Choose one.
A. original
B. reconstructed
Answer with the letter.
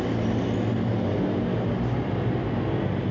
A